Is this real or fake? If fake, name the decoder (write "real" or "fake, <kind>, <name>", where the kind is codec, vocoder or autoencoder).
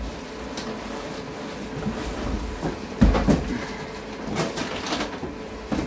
real